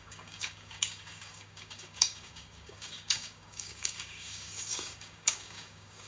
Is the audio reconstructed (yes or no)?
yes